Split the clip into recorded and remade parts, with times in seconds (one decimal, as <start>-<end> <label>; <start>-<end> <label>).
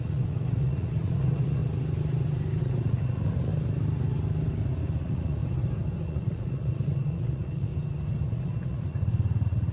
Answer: 0.0-1.6 remade; 1.6-2.6 recorded; 2.6-3.5 remade; 3.5-5.0 recorded; 5.0-5.4 remade; 5.4-6.0 recorded; 6.0-7.7 remade; 7.7-8.3 recorded; 8.3-9.7 remade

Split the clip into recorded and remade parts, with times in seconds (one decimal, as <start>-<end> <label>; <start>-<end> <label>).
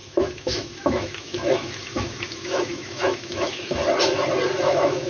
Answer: 0.0-3.8 remade; 3.8-4.6 recorded; 4.6-5.1 remade